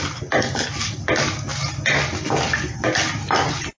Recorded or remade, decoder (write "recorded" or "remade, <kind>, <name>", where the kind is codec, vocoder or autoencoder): recorded